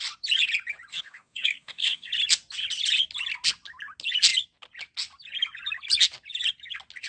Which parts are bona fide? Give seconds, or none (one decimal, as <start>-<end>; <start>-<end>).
0.0-0.9; 2.1-7.1